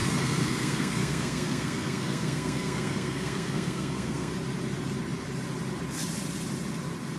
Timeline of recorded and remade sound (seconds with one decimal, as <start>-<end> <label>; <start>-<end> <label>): 0.0-4.3 remade; 4.3-7.2 recorded